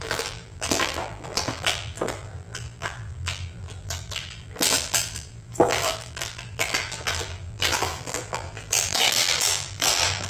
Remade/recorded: remade